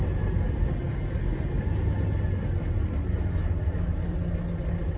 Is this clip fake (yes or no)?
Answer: no